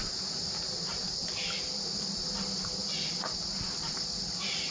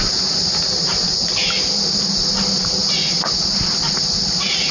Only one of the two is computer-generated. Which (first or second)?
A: first